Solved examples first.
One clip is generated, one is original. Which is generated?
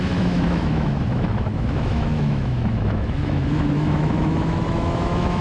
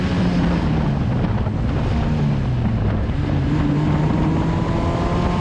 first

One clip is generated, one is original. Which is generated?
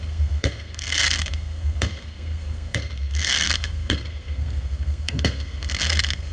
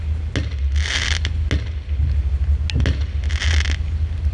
first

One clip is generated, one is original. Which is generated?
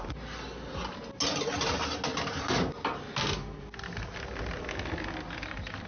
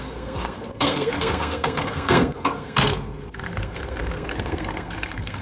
second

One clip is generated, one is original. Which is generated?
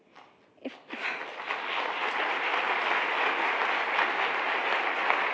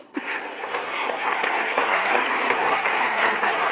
second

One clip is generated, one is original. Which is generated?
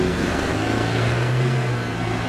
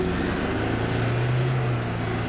first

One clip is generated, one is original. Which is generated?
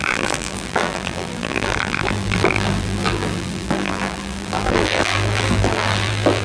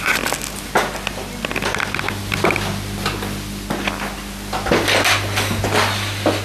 first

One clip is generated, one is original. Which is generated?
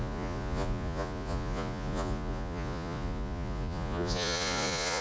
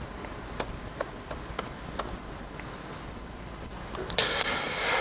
first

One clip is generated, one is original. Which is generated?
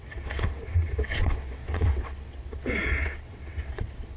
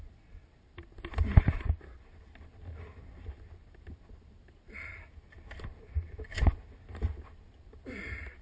first